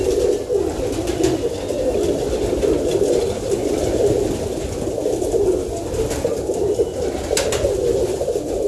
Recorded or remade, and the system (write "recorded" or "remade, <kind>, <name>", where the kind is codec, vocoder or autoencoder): recorded